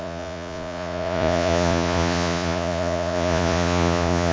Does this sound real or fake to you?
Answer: fake